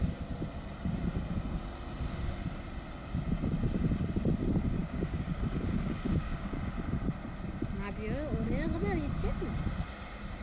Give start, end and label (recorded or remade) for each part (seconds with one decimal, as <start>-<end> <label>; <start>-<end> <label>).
0.0-4.8 recorded; 4.8-6.6 remade; 6.6-10.4 recorded